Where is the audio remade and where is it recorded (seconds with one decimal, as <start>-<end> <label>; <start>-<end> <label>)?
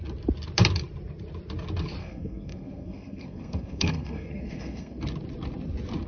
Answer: 0.0-2.0 recorded; 2.0-5.0 remade; 5.0-6.1 recorded